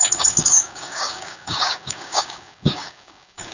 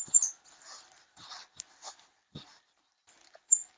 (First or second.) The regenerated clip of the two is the first